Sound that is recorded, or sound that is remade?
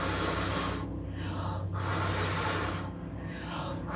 recorded